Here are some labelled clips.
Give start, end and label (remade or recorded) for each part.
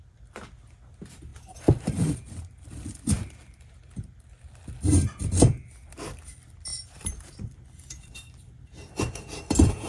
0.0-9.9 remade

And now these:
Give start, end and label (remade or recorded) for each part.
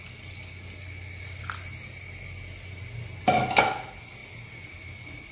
0.0-5.3 recorded